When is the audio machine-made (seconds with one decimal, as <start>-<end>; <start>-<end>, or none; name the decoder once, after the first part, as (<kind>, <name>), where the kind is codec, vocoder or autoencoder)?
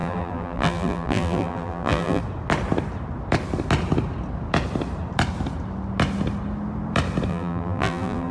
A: 0.0-2.2 (vocoder, BigVGAN v2); 7.3-8.3